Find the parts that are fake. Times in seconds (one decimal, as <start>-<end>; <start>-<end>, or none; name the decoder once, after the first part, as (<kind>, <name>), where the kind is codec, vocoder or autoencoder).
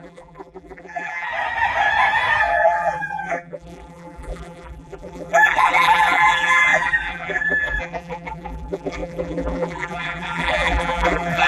0.0-1.3 (vocoder, BigVGAN v2); 2.4-11.5